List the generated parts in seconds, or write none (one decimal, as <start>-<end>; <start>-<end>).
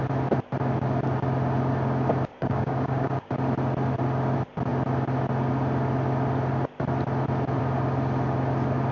2.3-3.3